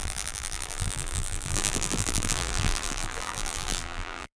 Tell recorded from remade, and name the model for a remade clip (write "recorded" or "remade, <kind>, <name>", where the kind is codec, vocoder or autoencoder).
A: remade, vocoder, BigVGAN v2